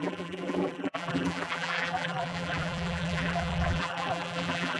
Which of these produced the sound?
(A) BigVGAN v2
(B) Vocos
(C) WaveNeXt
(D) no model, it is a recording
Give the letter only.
A